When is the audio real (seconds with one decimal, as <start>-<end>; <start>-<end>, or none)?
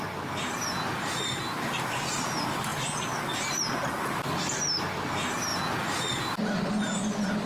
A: 0.0-7.5